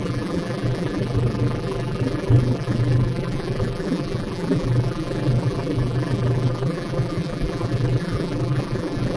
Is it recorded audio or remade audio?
remade